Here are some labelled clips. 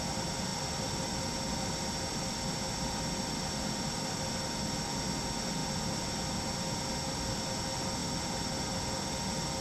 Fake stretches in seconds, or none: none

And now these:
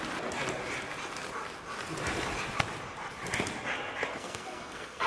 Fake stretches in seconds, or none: 4.1-5.1 (codec, SNAC)